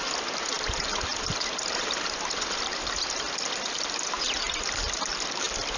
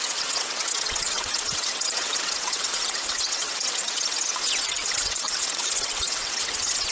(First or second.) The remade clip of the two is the second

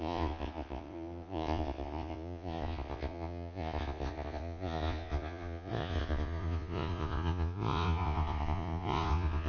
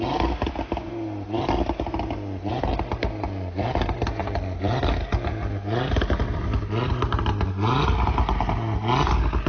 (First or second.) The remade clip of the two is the first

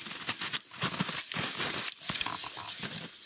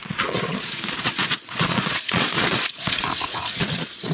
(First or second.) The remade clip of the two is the second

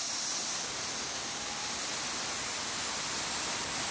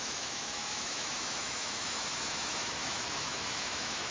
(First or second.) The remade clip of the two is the second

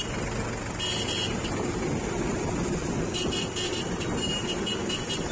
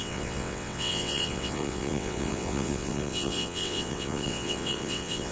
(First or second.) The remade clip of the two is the second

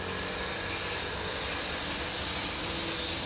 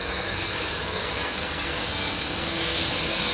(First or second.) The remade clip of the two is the second